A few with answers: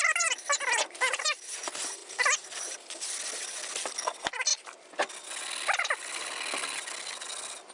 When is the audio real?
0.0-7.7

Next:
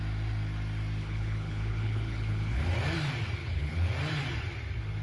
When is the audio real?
0.0-1.0; 2.6-3.4; 3.9-5.0

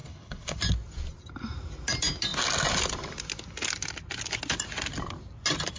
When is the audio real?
0.6-5.8

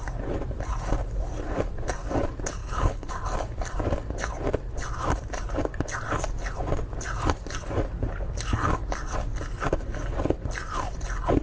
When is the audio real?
0.0-2.6; 3.1-11.4

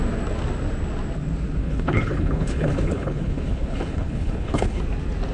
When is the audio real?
0.0-1.6; 4.8-5.3

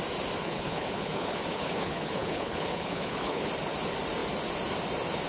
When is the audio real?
0.0-0.4; 3.5-5.3